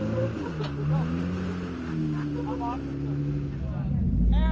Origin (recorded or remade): recorded